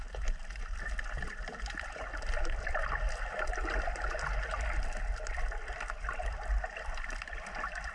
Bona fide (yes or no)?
yes